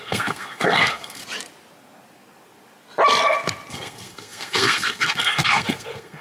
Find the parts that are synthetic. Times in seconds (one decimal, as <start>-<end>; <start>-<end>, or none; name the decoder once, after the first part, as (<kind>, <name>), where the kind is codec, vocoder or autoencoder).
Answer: 0.0-1.2 (codec, SNAC); 3.7-6.2